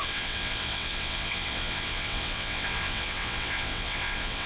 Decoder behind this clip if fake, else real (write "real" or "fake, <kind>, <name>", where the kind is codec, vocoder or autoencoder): fake, vocoder, WaveNeXt